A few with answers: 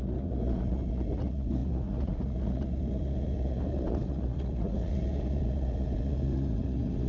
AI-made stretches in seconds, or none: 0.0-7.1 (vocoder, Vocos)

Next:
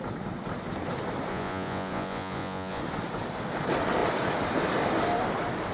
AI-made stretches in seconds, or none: 1.3-2.8 (vocoder, Vocos)

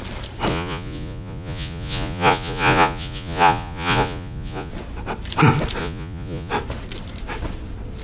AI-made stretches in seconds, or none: 0.5-4.7 (vocoder, Vocos); 5.8-6.5

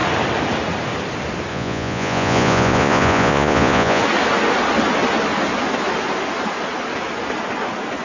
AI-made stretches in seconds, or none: 1.5-4.0 (vocoder, Vocos)

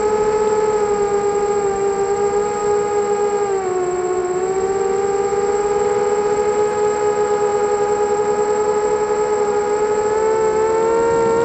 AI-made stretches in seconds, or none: none